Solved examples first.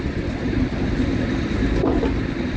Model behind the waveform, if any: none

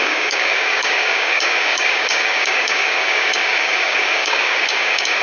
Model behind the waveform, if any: codec, DAC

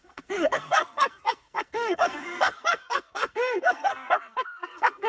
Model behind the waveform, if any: codec, SNAC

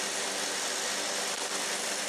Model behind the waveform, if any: none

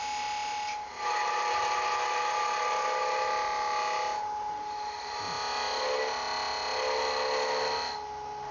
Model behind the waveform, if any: none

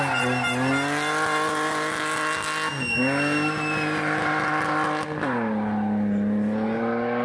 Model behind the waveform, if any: none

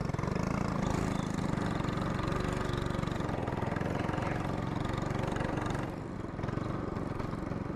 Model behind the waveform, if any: none